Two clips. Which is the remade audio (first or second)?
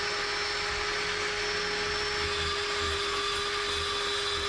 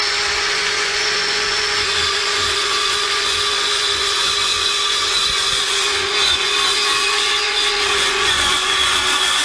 second